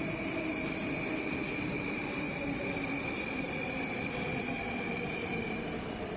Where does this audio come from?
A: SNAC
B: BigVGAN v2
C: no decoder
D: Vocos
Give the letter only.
B